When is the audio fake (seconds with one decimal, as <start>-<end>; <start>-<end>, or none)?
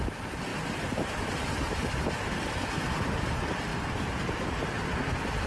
0.5-3.0; 3.7-4.5